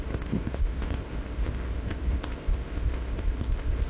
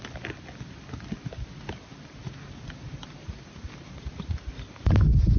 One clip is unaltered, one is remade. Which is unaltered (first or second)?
second